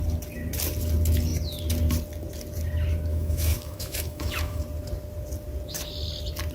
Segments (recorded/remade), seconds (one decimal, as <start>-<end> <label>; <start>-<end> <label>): 0.0-3.1 recorded; 3.1-4.6 remade; 4.6-6.5 recorded